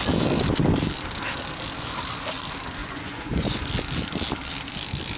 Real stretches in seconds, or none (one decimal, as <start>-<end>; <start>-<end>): 0.0-2.8; 3.7-5.2